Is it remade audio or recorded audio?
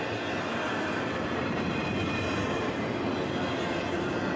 recorded